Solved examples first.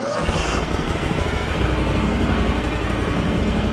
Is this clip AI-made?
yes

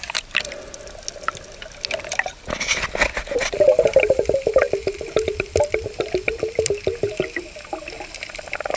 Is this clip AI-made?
no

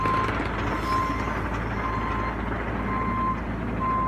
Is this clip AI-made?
no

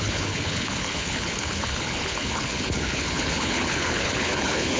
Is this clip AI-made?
yes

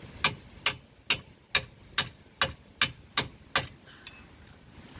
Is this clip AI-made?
no